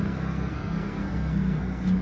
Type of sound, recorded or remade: remade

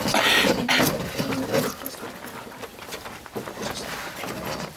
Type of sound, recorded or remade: recorded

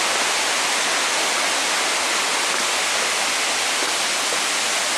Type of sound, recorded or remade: recorded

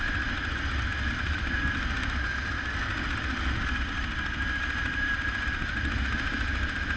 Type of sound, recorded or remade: recorded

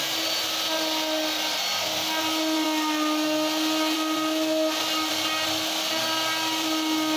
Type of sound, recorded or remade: recorded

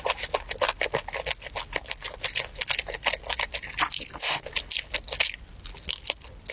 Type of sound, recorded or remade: recorded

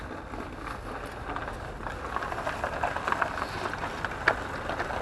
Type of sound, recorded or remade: recorded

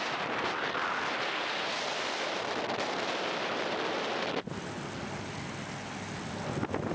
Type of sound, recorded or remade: recorded